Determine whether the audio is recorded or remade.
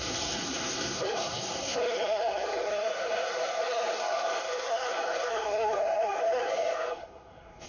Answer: remade